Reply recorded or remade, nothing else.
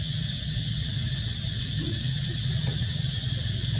remade